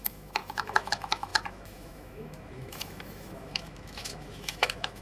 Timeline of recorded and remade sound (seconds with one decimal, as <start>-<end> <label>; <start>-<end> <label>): 0.0-5.0 remade